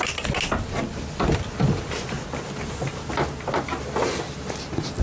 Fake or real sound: real